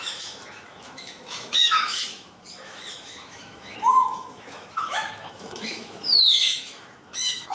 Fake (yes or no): yes